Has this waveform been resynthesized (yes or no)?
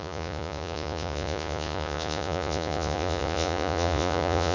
yes